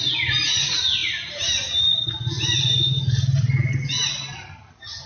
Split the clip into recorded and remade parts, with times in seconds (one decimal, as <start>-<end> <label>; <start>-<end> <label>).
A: 0.0-5.1 recorded